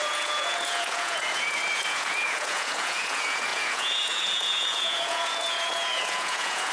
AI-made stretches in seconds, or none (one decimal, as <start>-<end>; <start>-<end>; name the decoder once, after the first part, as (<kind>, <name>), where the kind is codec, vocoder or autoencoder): 0.0-6.7 (vocoder, Vocos)